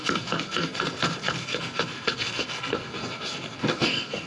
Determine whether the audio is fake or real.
fake